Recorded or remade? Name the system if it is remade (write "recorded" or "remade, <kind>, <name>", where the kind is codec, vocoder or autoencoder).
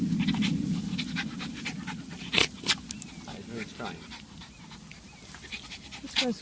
recorded